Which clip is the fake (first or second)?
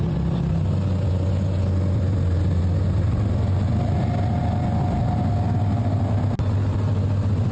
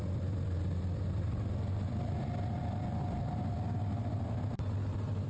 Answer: second